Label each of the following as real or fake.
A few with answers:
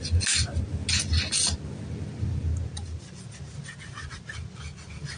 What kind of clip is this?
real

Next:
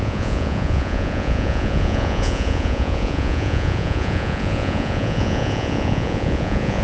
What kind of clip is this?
fake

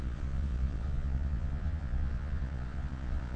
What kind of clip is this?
fake